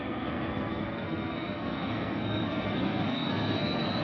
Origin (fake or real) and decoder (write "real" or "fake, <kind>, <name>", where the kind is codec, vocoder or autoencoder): fake, codec, SNAC